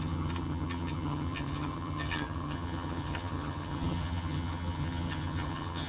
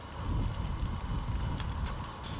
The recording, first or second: second